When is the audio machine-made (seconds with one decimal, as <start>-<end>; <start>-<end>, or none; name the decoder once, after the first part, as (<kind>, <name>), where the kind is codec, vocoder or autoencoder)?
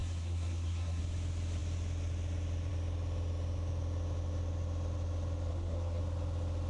0.0-1.0 (codec, SNAC); 5.5-6.0